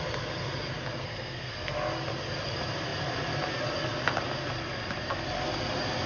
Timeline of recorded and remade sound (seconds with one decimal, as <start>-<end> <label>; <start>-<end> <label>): 0.0-1.0 recorded; 1.0-1.5 remade; 1.5-6.1 recorded